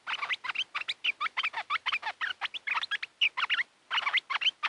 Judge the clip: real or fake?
real